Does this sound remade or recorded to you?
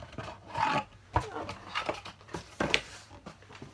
remade